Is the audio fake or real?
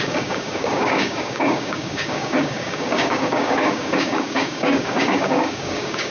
fake